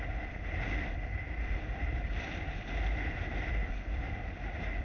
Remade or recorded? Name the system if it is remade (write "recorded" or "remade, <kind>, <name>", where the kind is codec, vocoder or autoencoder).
recorded